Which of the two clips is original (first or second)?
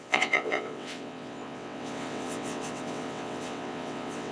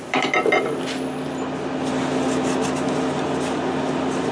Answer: second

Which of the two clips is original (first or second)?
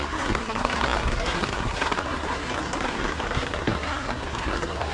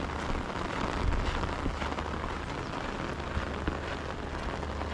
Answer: second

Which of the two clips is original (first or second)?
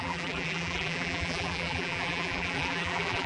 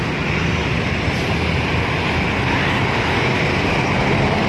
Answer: second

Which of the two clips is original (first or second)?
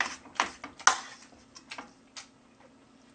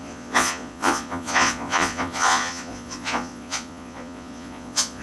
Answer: first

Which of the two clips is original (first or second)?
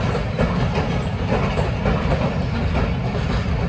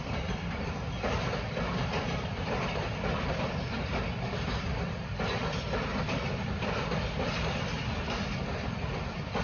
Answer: first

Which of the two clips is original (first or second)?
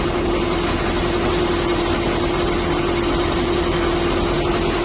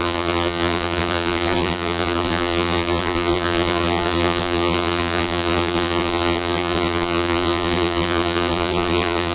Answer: first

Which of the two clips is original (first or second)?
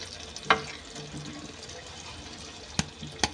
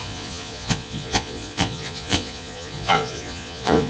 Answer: first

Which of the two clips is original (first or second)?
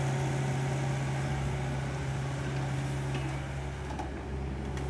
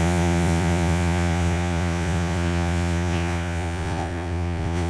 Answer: first